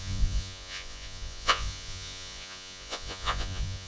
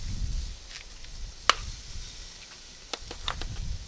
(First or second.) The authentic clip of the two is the second